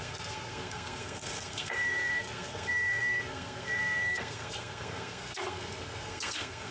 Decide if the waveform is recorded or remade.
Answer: remade